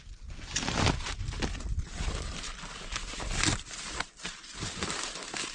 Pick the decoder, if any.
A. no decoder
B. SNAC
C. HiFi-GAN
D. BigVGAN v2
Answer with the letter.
A